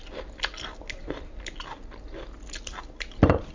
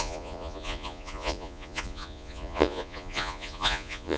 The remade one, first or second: second